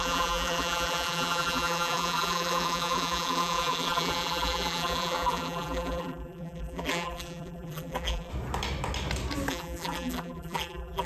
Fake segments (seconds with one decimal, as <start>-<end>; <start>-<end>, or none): 0.0-8.3; 9.5-11.1